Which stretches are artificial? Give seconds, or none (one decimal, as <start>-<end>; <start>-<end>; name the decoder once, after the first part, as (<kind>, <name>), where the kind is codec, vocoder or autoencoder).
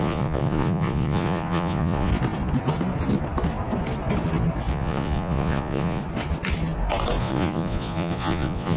0.0-2.1 (vocoder, Vocos); 4.7-6.0; 7.2-8.8